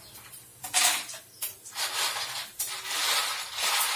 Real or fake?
real